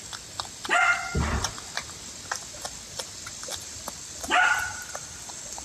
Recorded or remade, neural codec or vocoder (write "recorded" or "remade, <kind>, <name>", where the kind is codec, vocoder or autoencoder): recorded